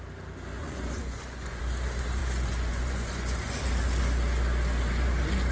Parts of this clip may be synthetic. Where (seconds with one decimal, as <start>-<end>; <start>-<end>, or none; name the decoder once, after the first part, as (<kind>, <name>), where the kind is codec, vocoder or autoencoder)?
0.6-1.6 (vocoder, Vocos); 2.2-3.6